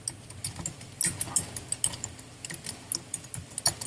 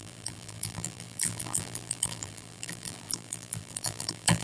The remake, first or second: second